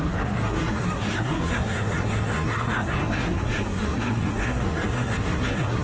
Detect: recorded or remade remade